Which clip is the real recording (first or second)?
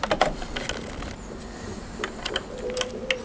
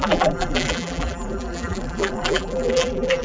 first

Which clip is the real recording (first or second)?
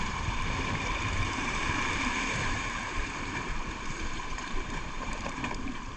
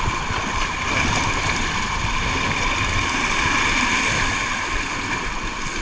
second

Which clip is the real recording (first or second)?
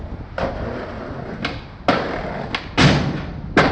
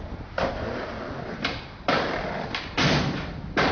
first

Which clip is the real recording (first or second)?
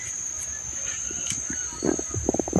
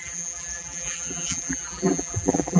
first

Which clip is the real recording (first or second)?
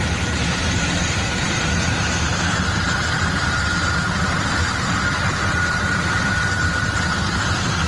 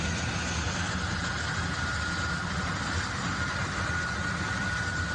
second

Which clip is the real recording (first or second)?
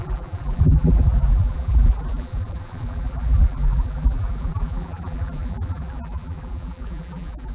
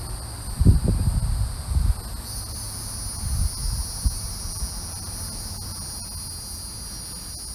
second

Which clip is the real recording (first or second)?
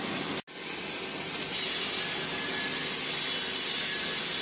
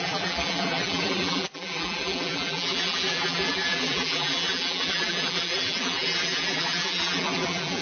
first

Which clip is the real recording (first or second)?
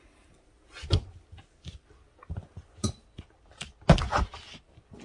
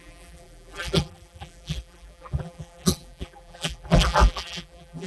first